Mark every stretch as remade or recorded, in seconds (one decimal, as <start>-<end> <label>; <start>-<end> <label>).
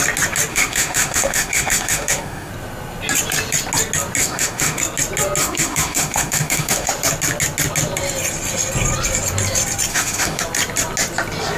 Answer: 0.0-0.5 recorded; 0.5-2.5 remade; 2.5-4.2 recorded; 4.2-4.8 remade; 4.8-5.4 recorded; 5.4-6.9 remade; 6.9-9.9 recorded; 9.9-10.4 remade; 10.4-11.6 recorded